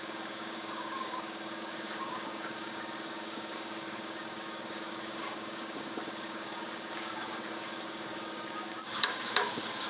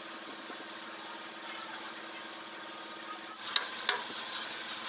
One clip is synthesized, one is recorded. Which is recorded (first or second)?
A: second